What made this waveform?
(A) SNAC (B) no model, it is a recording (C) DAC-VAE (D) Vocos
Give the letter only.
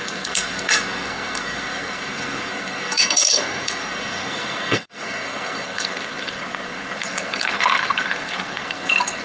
A